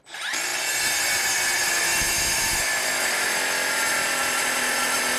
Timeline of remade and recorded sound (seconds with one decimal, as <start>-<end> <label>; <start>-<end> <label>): 0.0-5.2 recorded